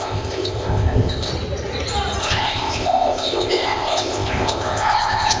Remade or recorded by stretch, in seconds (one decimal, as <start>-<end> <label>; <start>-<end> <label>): 0.0-1.3 remade; 1.3-2.2 recorded; 2.2-5.4 remade